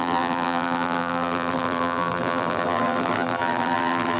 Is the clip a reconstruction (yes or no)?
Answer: yes